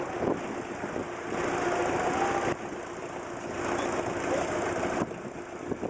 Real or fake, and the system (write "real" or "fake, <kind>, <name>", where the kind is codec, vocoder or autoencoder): real